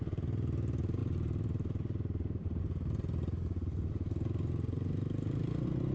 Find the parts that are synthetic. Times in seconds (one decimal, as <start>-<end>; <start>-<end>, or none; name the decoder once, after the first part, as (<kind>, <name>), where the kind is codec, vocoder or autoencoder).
1.0-2.6 (vocoder, BigVGAN v2)